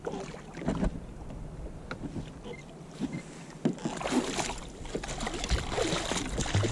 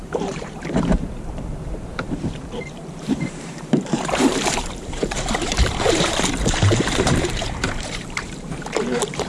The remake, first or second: second